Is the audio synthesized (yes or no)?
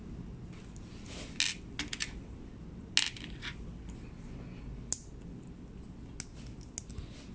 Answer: no